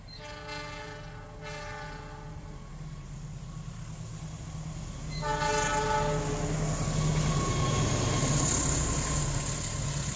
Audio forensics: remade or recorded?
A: recorded